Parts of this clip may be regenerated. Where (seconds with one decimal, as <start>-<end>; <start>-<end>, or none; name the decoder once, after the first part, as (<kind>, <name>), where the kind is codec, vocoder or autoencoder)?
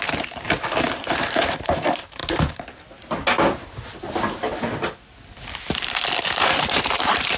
0.0-2.2 (vocoder, BigVGAN v2); 6.4-7.4